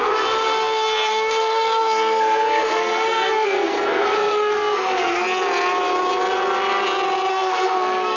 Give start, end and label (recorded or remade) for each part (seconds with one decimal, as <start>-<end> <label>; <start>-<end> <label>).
0.0-5.2 remade; 5.2-7.3 recorded; 7.3-8.2 remade